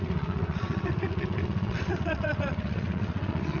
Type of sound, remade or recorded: remade